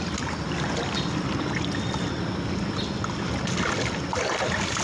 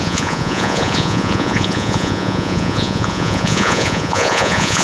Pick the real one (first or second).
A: first